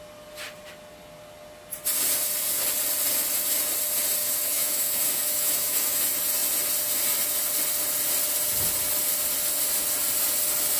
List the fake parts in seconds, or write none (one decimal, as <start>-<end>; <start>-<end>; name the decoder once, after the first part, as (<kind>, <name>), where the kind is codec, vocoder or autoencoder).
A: 4.2-6.0 (autoencoder, DAC-VAE)